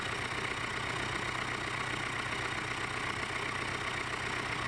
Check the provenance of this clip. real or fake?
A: real